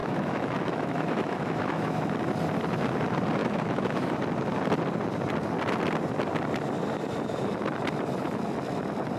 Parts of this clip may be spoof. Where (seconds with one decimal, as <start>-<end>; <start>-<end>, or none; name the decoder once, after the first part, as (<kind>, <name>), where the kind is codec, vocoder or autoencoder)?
0.0-2.0 (autoencoder, DAC-VAE); 3.4-4.2